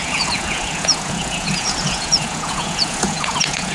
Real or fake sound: fake